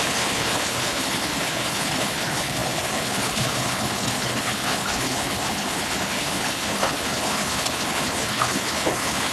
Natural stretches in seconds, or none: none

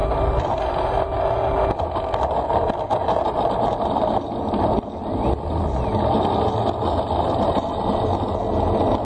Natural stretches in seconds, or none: 0.0-9.0